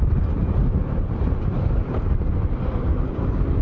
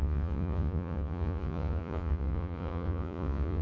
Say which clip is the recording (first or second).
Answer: first